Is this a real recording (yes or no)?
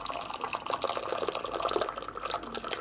yes